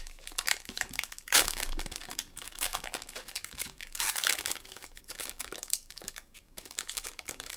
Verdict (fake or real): fake